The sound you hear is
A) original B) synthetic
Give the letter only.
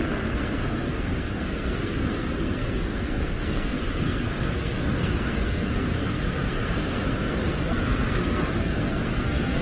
B